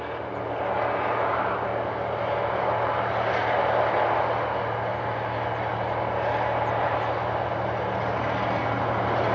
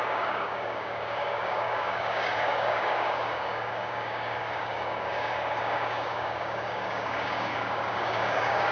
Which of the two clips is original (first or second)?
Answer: first